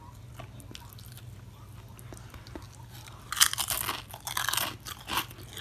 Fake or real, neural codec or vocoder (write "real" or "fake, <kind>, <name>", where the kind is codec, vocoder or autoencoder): real